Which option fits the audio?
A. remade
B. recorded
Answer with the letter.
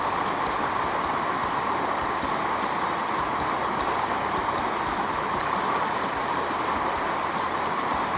B